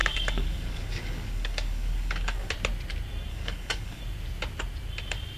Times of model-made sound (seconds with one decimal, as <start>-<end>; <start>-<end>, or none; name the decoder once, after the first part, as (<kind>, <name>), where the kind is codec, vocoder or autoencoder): 0.0-2.5 (codec, DAC); 3.3-4.0

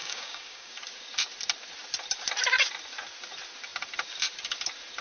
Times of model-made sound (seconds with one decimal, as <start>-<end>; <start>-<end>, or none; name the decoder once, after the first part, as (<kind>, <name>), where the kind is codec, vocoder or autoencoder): 0.0-0.7 (codec, DAC)

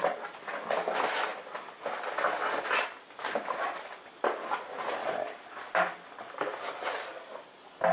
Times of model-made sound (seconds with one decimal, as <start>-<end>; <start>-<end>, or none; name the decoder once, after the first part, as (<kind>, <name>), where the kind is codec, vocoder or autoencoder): none

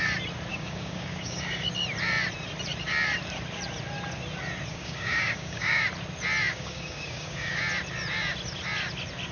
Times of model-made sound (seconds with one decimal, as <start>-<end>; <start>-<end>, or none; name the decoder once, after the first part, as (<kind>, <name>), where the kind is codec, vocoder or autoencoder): 0.5-1.7 (codec, DAC); 4.7-5.8; 6.5-7.6

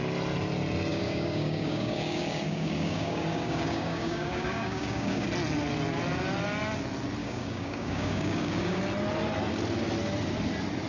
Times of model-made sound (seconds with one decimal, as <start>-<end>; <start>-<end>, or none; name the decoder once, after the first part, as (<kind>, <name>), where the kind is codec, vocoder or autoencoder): 0.9-5.3 (codec, DAC); 7.2-8.8

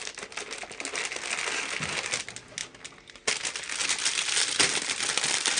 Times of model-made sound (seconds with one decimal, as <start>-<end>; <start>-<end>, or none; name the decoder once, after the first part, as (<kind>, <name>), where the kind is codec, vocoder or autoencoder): none

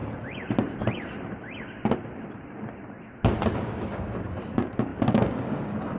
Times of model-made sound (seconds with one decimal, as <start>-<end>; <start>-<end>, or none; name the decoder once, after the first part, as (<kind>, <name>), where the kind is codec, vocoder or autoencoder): 3.6-6.0 (codec, DAC)

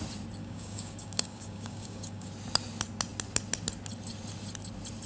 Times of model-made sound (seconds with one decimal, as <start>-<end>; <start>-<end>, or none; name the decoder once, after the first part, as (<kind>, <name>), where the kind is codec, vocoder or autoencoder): 0.4-2.3 (codec, DAC)